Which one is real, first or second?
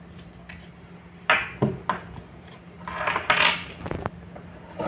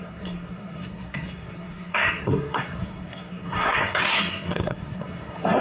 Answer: first